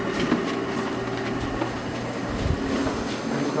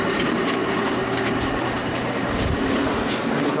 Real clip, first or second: first